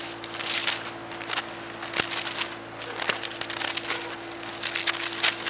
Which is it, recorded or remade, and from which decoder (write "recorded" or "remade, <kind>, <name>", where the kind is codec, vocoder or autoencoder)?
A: recorded